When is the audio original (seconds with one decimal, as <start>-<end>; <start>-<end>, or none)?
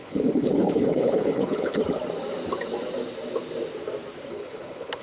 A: 1.8-4.3